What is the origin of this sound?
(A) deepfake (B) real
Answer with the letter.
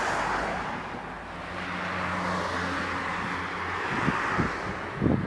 B